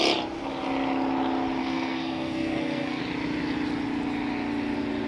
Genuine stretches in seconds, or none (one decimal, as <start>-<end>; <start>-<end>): 0.0-1.6; 3.0-5.1